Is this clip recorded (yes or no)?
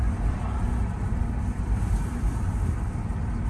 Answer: no